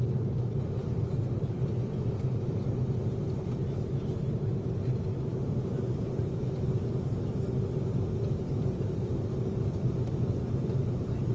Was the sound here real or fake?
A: real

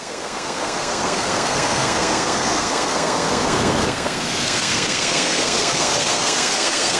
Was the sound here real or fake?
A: fake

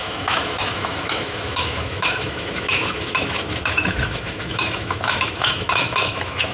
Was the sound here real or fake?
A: fake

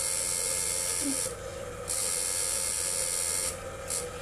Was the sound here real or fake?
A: real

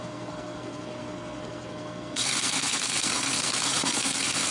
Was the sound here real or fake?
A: fake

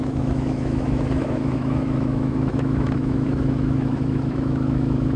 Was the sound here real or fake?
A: fake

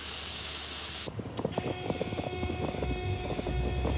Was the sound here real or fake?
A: fake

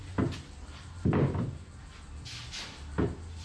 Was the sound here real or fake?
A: real